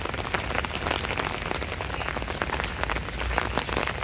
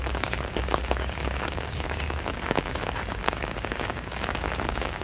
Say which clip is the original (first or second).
first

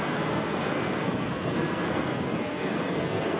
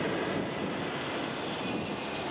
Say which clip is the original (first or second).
second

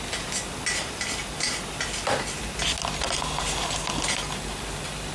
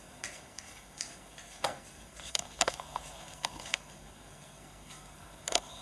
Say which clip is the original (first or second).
first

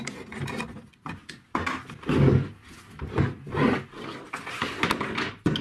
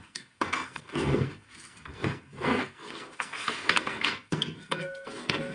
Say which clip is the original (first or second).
first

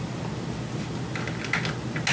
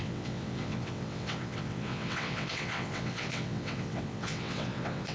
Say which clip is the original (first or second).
first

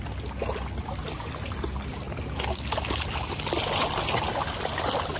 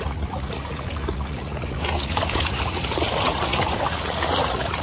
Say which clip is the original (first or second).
first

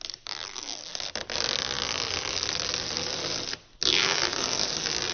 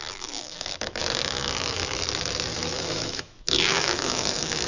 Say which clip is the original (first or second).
first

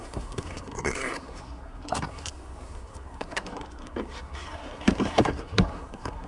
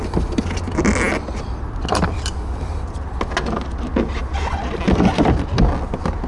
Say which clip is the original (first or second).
second